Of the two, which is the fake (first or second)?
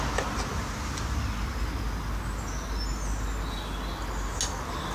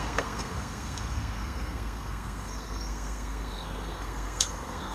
second